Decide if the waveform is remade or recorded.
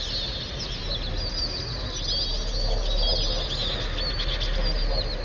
recorded